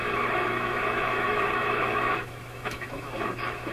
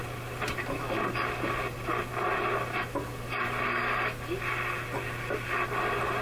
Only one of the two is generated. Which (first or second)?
first